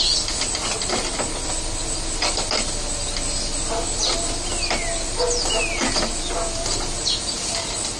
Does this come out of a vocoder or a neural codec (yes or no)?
no